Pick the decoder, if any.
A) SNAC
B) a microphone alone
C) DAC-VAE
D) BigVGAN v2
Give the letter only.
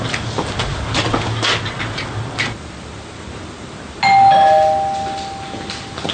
B